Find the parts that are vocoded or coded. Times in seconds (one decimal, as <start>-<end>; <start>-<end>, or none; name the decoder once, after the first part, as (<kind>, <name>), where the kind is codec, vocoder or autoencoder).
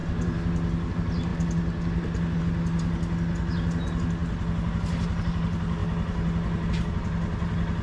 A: none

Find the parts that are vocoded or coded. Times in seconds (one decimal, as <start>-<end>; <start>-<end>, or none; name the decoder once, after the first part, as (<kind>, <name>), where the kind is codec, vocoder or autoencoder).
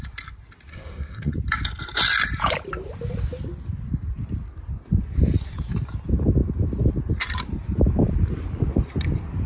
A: 0.7-1.3 (codec, SNAC)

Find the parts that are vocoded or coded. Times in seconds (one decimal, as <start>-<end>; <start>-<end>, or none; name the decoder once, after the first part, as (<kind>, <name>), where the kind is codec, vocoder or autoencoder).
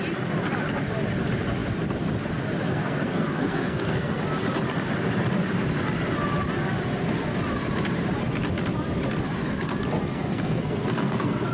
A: 2.7-4.2 (codec, SNAC); 10.1-11.5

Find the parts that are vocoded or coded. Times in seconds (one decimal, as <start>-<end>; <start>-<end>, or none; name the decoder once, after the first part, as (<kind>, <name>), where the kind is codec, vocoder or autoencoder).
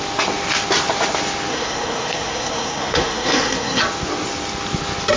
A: 1.5-3.8 (codec, SNAC)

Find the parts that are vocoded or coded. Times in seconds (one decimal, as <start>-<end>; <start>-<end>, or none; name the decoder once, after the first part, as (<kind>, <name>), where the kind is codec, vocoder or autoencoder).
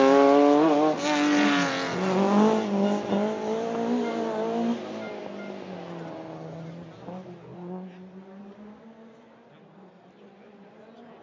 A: none